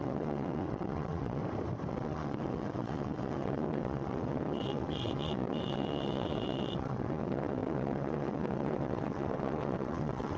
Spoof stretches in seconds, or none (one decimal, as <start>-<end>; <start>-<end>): 0.0-1.4; 1.9-10.4